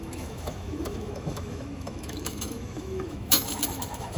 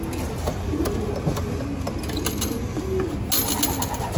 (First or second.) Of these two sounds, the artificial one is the first